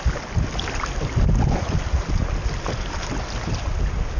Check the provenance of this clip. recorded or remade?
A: recorded